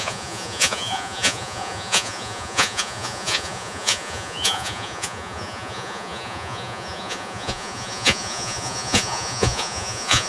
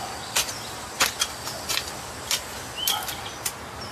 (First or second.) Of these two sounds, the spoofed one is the first